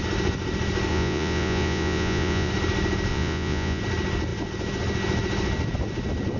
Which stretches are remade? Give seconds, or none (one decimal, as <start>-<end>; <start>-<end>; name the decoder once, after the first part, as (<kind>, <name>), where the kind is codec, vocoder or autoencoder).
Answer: 0.9-2.5 (vocoder, Vocos); 3.1-3.8